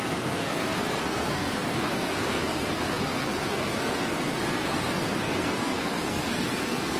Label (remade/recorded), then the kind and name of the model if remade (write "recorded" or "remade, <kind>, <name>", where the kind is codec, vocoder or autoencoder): remade, codec, SNAC